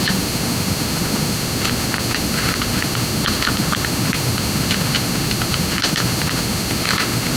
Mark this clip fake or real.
fake